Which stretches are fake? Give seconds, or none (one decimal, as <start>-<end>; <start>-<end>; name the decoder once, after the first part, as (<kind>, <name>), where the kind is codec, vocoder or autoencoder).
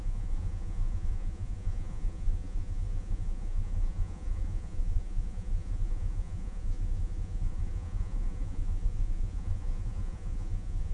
0.0-10.9 (vocoder, Vocos)